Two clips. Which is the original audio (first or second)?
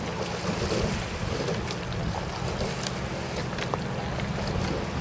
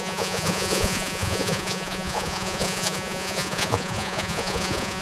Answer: first